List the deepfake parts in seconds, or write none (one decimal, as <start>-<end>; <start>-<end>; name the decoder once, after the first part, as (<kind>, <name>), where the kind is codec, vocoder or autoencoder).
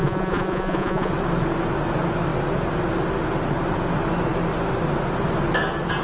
0.0-1.1 (vocoder, Vocos)